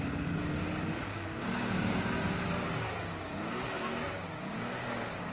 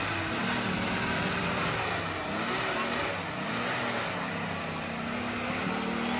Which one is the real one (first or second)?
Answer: second